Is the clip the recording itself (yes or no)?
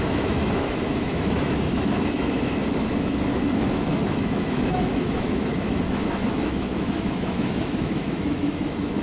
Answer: no